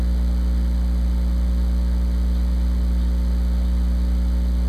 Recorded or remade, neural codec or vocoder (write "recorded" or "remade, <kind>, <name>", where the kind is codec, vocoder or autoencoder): recorded